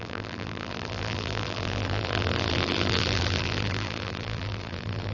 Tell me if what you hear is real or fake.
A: fake